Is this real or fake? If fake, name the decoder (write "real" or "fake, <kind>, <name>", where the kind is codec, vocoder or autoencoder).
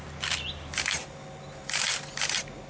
real